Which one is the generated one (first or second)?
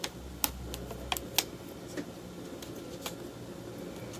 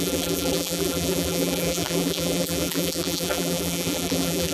second